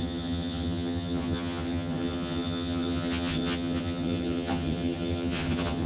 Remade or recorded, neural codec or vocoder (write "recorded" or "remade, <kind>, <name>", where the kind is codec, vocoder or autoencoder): remade, vocoder, HiFi-GAN